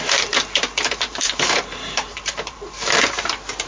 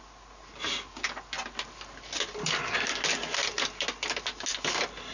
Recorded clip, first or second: second